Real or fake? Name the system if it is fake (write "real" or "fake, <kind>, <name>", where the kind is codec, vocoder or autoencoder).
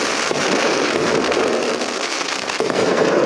fake, codec, SNAC